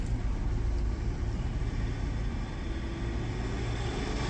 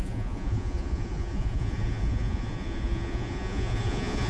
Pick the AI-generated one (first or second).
second